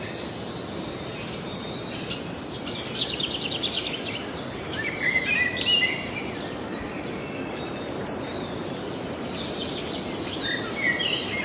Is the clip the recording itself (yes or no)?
yes